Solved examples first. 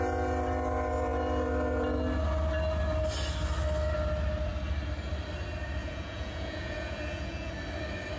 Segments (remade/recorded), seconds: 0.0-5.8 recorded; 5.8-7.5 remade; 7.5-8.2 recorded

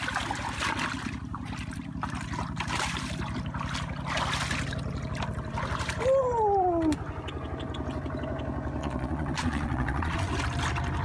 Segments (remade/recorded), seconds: 0.0-8.8 recorded; 8.8-10.3 remade; 10.3-11.0 recorded

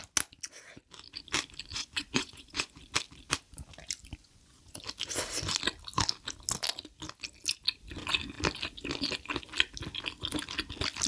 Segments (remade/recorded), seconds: 0.0-1.7 recorded; 1.7-2.8 remade; 2.8-4.2 recorded; 4.2-4.8 remade; 4.8-11.1 recorded

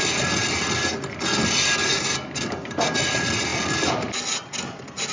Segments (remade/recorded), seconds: 0.0-5.1 recorded

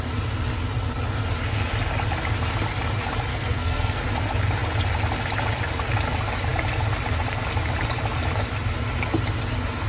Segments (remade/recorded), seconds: 0.0-3.3 recorded; 3.3-4.0 remade; 4.0-9.9 recorded

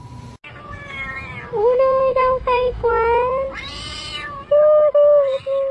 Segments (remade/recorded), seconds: 0.0-1.6 recorded; 1.6-2.9 remade; 2.9-5.7 recorded